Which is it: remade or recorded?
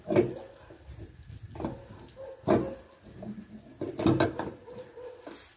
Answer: recorded